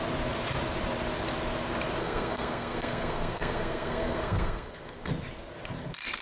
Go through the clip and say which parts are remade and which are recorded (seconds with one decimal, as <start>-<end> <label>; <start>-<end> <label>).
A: 0.0-2.0 recorded; 2.0-5.1 remade; 5.1-6.2 recorded